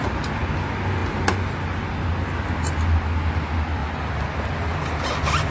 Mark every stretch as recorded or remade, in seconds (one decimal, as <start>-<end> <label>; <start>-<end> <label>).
0.0-5.5 recorded